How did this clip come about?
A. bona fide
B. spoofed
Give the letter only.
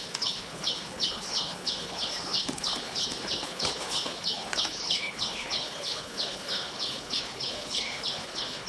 B